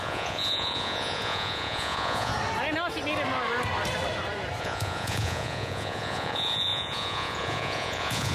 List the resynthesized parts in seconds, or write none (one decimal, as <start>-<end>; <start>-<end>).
0.0-2.3; 4.6-8.3